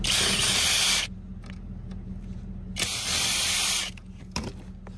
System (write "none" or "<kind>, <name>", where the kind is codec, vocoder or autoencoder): none